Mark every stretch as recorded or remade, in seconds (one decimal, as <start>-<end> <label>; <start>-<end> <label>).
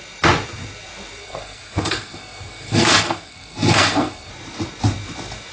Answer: 0.0-1.2 recorded; 1.2-4.3 remade; 4.3-5.5 recorded